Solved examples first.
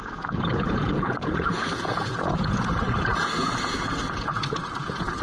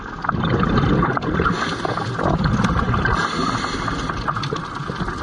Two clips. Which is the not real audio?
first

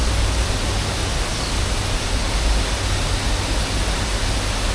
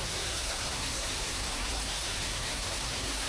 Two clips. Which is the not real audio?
second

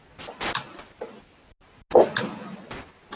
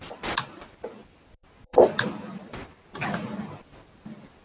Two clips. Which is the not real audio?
second